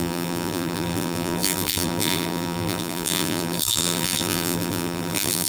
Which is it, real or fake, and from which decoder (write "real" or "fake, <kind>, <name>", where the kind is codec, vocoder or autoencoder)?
fake, vocoder, BigVGAN v2